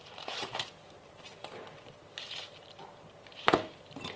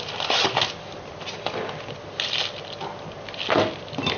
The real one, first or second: second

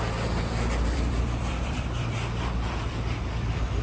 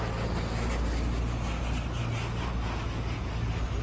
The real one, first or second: second